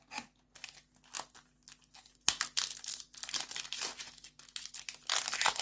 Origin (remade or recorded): recorded